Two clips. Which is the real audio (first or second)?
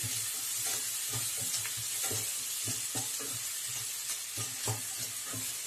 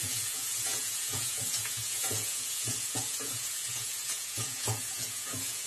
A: first